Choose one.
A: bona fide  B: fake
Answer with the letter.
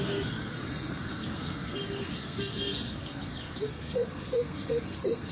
B